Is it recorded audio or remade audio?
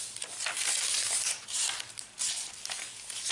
recorded